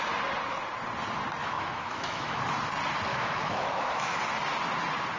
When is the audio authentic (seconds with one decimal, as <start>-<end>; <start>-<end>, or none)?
0.0-1.4; 2.4-3.1; 4.2-5.2